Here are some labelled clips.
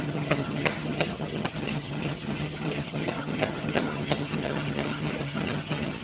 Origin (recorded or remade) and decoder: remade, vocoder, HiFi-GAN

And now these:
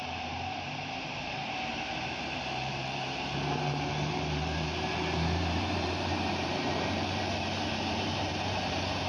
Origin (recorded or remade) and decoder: remade, vocoder, BigVGAN v2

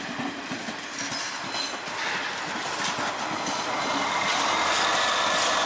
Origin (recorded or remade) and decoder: recorded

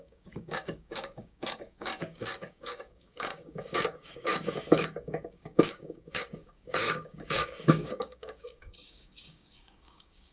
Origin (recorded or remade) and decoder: remade, codec, DAC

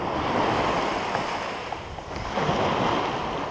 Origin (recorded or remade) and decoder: recorded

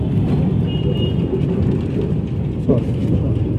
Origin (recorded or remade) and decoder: recorded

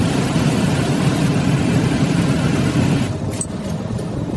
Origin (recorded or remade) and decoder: recorded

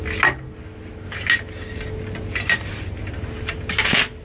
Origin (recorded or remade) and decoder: recorded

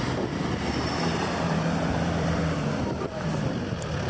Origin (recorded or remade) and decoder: remade, vocoder, BigVGAN v2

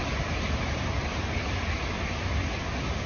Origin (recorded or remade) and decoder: recorded